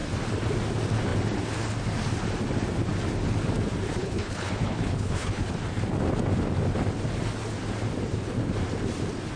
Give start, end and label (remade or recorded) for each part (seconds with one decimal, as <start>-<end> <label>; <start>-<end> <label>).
0.0-4.0 recorded; 4.0-5.5 remade; 5.5-9.4 recorded

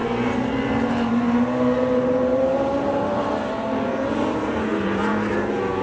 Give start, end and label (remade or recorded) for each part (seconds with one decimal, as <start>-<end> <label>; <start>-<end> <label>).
0.0-5.8 remade

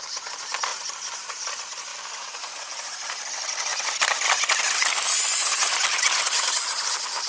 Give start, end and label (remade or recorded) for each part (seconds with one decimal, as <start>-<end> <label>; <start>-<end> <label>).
0.0-0.7 recorded; 0.7-1.5 remade; 1.5-1.9 recorded; 1.9-3.1 remade; 3.1-7.3 recorded

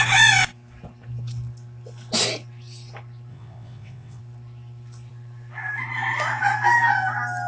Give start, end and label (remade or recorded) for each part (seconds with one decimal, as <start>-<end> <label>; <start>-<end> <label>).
0.0-3.3 recorded; 3.3-4.2 remade; 4.2-7.5 recorded

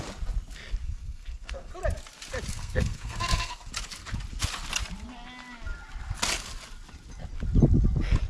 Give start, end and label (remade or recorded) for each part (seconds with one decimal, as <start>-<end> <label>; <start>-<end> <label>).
0.0-0.8 recorded; 0.8-1.7 remade; 1.7-2.5 recorded; 2.5-3.7 remade; 3.7-8.3 recorded